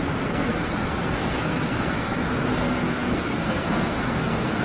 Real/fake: fake